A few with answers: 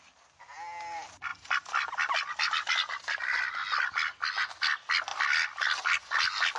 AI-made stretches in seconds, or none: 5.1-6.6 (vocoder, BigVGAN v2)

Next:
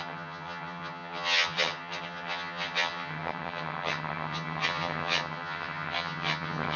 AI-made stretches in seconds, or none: 0.0-6.8 (vocoder, HiFi-GAN)

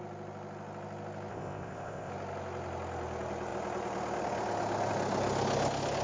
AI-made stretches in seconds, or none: 1.3-2.1 (codec, ZipCodec)

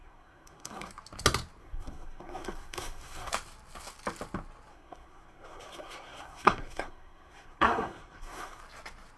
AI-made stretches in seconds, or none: 0.0-0.9 (codec, SNAC); 1.6-3.3; 4.7-8.6

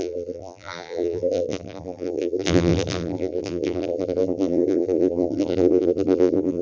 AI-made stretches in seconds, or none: 0.0-6.6 (vocoder, BigVGAN v2)